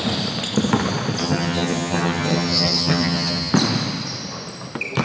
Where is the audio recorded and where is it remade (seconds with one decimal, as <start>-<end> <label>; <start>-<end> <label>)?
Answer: 0.0-1.2 recorded; 1.2-3.5 remade; 3.5-5.0 recorded